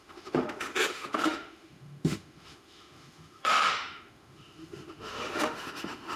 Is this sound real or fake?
fake